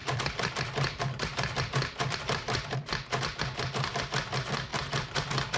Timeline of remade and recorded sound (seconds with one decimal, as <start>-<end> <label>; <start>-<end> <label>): 0.0-3.4 remade; 3.4-4.7 recorded; 4.7-5.6 remade